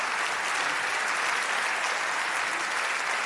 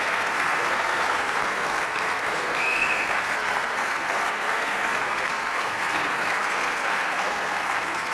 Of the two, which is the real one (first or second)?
first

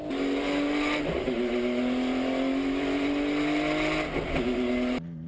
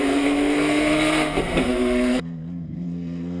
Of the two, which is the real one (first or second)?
first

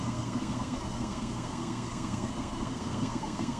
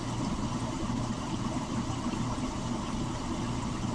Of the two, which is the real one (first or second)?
second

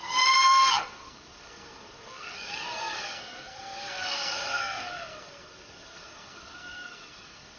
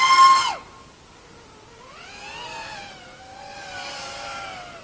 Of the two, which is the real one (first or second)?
second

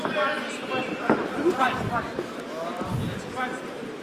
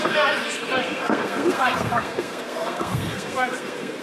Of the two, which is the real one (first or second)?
first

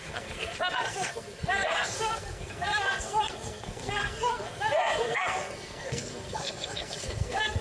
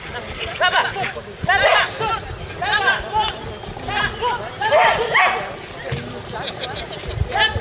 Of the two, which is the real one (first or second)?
second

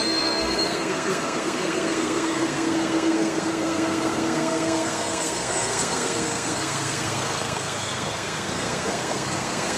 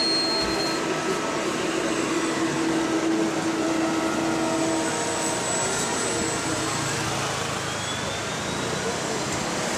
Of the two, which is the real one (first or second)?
second